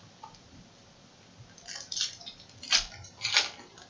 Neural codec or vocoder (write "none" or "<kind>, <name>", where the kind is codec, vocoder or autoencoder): vocoder, BigVGAN v2